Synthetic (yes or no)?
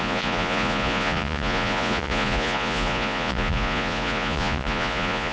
yes